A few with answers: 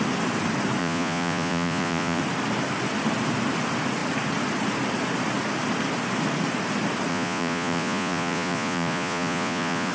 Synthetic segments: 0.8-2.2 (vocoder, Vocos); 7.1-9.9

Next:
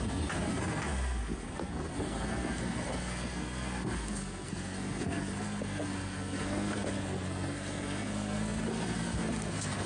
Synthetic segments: 0.0-9.9 (codec, SNAC)

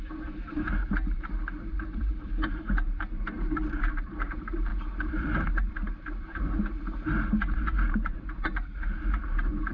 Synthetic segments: 0.0-9.7 (vocoder, BigVGAN v2)